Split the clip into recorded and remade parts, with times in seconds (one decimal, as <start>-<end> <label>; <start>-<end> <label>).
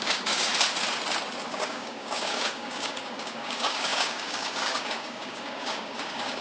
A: 0.0-0.5 remade; 0.5-1.5 recorded; 1.5-6.4 remade